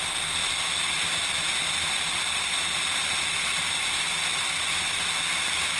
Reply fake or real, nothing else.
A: real